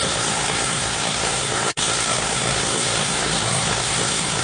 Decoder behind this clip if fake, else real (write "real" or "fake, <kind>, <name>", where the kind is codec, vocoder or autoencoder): fake, codec, SNAC